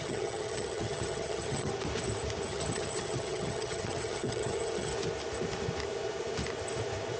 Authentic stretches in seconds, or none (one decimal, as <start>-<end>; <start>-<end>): 1.7-2.5; 4.9-7.2